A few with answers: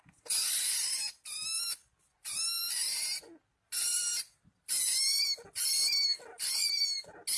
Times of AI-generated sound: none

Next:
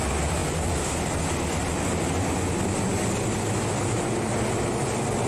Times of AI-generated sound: none

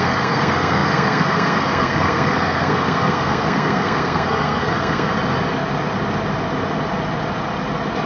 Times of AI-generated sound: 0.0-5.1

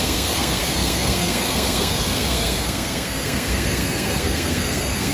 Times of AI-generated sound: 0.0-5.1

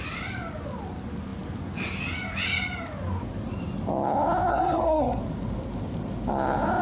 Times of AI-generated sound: 4.5-5.2

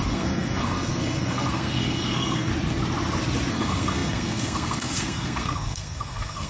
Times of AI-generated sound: 0.0-2.5; 3.5-6.5

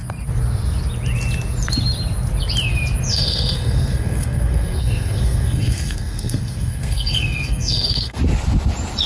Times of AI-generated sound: 3.1-8.2